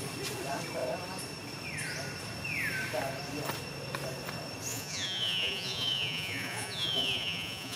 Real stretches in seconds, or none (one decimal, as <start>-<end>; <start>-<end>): 0.0-4.7